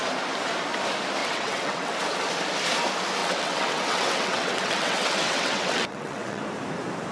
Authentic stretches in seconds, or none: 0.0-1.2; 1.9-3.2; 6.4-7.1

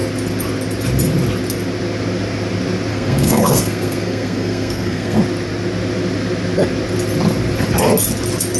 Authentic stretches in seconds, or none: 0.0-2.9; 5.2-8.6

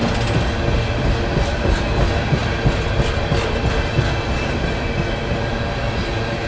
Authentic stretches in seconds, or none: 0.0-6.5

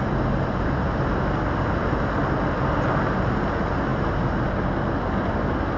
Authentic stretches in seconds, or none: 0.0-5.8